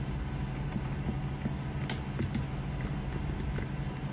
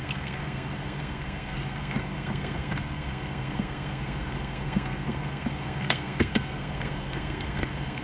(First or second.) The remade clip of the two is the second